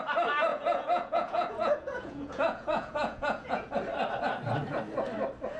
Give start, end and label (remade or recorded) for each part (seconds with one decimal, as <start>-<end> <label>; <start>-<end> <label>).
0.0-0.5 recorded; 0.5-3.7 remade; 3.7-5.6 recorded